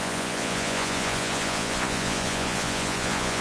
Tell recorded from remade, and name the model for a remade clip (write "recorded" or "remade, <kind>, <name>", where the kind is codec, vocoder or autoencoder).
remade, vocoder, Vocos